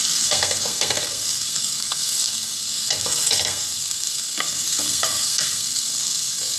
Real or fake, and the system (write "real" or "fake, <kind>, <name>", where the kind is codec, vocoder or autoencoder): fake, codec, SNAC